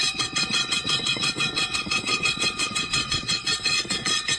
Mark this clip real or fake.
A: fake